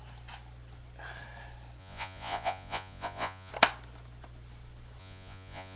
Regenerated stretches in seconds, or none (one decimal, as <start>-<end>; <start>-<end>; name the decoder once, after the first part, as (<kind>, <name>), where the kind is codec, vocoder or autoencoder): 1.8-3.5 (vocoder, Vocos); 5.0-5.8